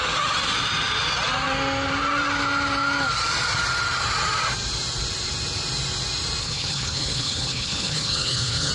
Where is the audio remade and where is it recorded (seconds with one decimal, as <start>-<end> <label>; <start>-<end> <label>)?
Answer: 0.0-6.4 recorded; 6.4-8.7 remade